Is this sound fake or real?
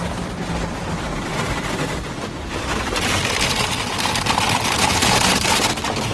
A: real